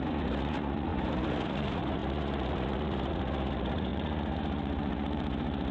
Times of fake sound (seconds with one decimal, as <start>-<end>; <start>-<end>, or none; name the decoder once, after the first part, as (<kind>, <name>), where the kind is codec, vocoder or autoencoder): 0.0-5.7 (vocoder, Vocos)